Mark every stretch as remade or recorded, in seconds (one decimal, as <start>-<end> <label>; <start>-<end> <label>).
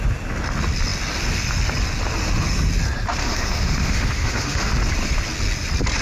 0.0-3.2 recorded; 3.2-4.7 remade; 4.7-6.0 recorded